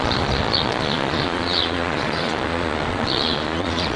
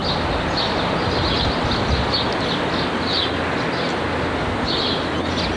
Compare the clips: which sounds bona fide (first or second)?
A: second